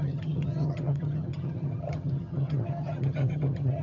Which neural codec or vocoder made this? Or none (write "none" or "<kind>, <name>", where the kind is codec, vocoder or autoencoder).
vocoder, HiFi-GAN